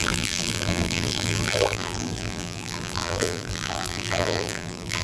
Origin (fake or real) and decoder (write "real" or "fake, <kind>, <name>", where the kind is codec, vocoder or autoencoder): fake, vocoder, BigVGAN v2